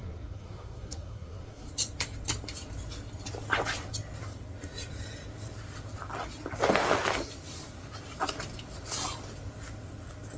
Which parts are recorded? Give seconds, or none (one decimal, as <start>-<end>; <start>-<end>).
1.7-10.4